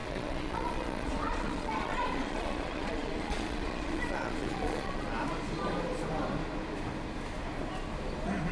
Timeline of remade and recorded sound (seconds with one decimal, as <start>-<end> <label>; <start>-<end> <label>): 0.0-5.1 remade; 5.1-8.5 recorded